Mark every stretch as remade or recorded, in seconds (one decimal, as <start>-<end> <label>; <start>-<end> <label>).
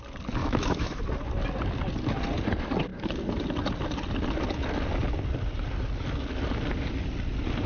0.0-0.4 recorded; 0.4-1.0 remade; 1.0-7.7 recorded